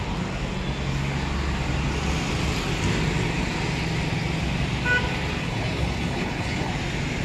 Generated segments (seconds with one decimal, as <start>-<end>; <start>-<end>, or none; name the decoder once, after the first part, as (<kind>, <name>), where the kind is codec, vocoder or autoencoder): 5.4-6.7 (codec, HILCodec)